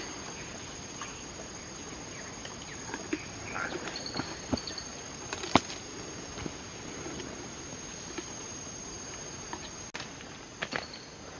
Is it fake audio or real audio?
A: real